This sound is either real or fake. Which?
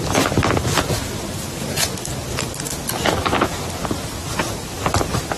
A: real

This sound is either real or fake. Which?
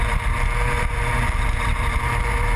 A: fake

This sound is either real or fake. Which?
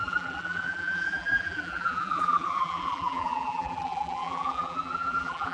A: fake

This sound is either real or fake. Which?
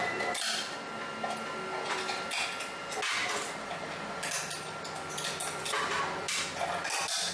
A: real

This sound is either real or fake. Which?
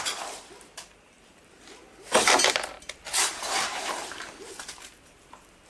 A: fake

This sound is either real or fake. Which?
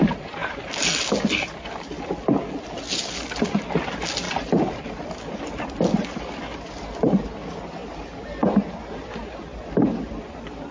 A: real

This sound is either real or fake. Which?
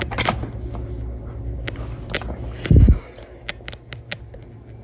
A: real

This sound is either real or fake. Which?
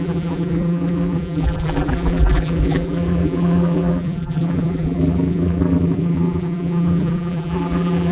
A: fake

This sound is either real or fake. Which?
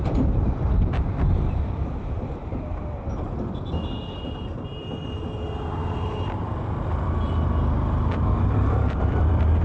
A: fake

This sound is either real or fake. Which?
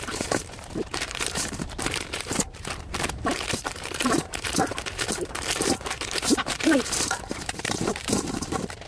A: fake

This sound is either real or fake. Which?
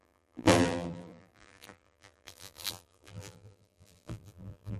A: fake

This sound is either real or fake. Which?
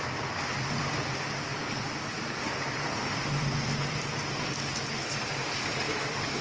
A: fake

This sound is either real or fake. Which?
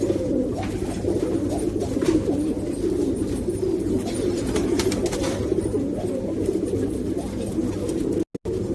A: real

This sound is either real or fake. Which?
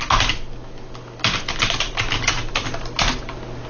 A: real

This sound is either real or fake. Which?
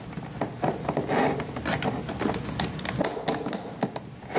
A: real